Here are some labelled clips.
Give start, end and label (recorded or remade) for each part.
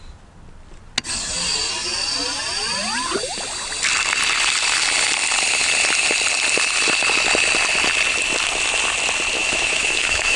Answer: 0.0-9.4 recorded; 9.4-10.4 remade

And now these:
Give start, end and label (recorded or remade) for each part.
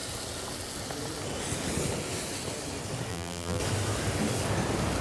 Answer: 0.0-3.1 recorded; 3.1-3.6 remade; 3.6-5.0 recorded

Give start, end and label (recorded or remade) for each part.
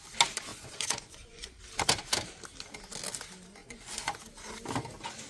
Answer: 0.0-0.5 recorded; 0.5-1.6 remade; 1.6-3.6 recorded; 3.6-4.2 remade; 4.2-5.3 recorded